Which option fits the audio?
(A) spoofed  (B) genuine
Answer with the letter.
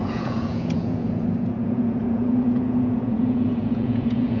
A